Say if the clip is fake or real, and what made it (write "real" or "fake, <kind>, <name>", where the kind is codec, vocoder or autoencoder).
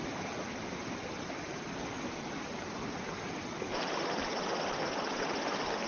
real